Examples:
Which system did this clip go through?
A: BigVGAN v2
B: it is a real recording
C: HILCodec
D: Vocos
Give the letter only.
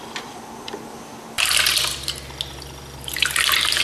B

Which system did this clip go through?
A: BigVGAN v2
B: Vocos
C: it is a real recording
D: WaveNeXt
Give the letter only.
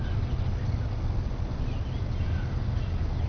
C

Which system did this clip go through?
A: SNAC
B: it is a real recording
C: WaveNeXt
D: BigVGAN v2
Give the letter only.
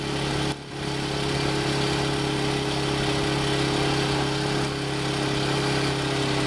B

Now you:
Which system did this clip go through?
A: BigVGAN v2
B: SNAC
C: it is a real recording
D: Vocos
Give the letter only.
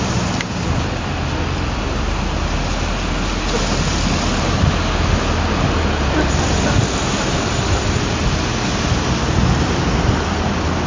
C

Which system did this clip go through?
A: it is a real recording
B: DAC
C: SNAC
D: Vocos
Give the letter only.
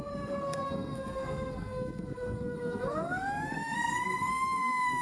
C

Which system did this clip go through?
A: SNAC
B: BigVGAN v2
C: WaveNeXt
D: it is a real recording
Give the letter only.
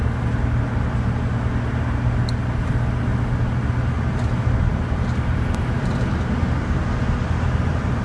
D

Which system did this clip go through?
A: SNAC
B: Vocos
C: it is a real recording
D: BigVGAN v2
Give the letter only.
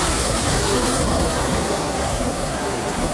A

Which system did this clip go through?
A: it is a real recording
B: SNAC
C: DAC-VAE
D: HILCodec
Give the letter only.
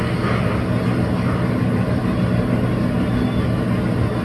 A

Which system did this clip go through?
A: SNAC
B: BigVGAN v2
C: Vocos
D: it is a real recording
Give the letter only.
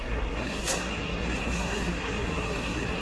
A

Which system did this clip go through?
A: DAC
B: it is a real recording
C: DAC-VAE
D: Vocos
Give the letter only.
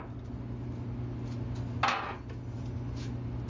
B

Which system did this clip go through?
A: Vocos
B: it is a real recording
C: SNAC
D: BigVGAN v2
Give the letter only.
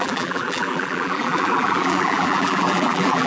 D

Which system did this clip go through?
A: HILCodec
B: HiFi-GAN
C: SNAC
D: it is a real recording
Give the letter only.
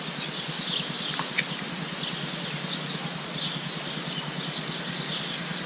D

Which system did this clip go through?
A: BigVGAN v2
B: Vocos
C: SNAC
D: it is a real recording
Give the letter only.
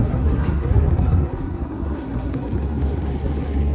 C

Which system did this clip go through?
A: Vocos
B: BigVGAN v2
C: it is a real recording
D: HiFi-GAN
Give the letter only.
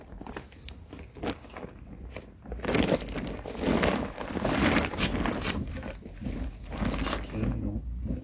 C